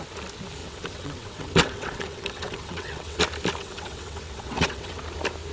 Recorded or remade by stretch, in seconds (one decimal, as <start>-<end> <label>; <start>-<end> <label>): 0.0-0.6 recorded; 0.6-3.2 remade; 3.2-3.6 recorded; 3.6-5.0 remade; 5.0-5.5 recorded